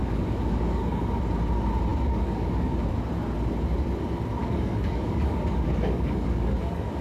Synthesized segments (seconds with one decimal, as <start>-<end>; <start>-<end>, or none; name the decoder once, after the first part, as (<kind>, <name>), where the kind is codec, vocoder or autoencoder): 0.0-1.2 (codec, DAC); 1.9-2.9; 4.4-7.0